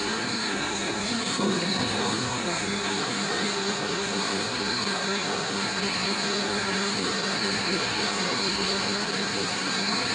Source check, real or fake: fake